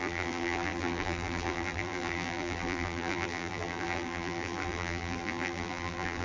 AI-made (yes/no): yes